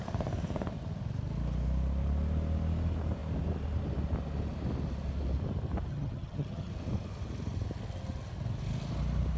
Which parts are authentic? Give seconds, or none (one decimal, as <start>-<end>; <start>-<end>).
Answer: 0.0-5.9; 6.7-9.4